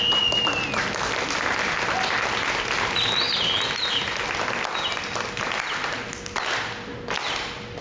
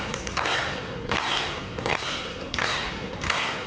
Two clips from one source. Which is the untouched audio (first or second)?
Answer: first